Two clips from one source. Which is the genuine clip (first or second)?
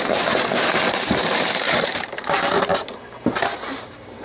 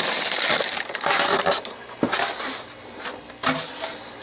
second